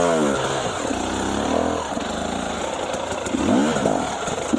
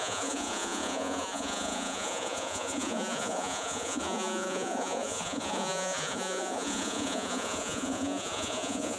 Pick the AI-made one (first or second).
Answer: second